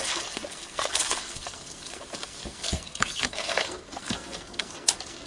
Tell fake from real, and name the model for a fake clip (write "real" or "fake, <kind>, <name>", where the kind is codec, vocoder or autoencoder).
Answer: fake, codec, SNAC